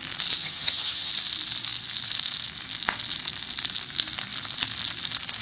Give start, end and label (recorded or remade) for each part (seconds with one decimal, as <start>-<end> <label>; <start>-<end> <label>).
0.0-0.4 recorded; 0.4-1.1 remade; 1.1-5.4 recorded